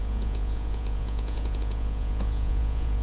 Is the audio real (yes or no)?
no